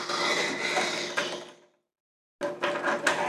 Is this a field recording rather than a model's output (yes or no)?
yes